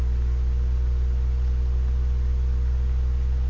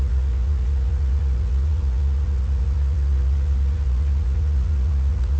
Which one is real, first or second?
first